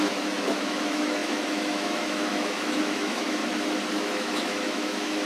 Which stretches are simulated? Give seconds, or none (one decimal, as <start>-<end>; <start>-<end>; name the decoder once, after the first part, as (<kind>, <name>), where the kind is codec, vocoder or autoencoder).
0.0-3.4 (autoencoder, DAC-VAE); 3.9-5.3